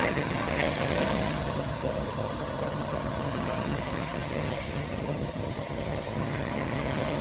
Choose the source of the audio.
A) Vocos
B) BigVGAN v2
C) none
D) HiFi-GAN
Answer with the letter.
D